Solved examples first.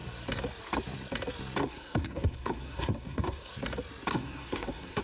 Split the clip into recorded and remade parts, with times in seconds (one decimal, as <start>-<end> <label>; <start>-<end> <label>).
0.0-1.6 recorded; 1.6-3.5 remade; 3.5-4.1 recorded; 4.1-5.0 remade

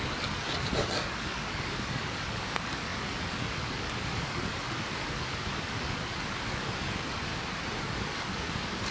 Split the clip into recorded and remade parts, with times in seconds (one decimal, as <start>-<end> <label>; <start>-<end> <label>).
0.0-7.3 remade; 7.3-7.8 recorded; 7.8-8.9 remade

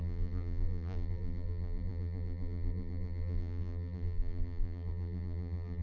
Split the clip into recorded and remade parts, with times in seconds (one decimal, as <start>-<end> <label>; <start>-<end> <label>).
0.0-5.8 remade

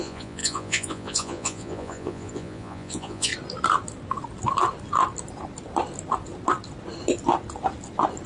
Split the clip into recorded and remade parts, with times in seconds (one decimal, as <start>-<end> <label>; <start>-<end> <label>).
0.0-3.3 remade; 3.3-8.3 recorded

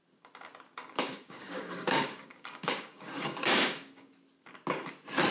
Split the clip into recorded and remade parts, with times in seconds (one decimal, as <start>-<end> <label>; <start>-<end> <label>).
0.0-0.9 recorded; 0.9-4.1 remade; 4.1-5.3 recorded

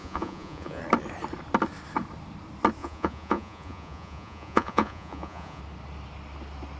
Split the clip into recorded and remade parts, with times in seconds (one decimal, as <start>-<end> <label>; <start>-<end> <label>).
0.0-0.8 remade; 0.8-2.8 recorded; 2.8-5.6 remade; 5.6-6.8 recorded

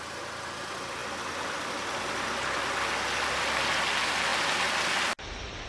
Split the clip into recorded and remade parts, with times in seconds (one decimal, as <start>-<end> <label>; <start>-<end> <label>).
0.0-5.7 recorded

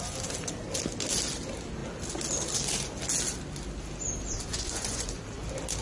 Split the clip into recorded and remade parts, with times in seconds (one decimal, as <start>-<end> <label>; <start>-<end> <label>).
0.0-4.5 recorded; 4.5-5.2 remade; 5.2-5.8 recorded